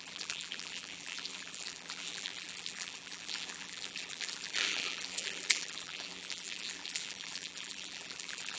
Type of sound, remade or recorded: remade